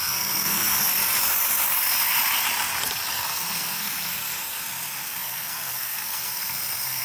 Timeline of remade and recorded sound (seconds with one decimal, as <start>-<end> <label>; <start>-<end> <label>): 0.0-0.8 remade; 0.8-3.1 recorded; 3.1-7.0 remade